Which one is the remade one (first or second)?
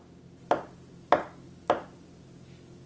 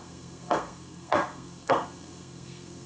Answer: second